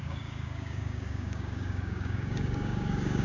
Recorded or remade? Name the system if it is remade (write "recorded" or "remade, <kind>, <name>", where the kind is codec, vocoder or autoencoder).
remade, codec, DAC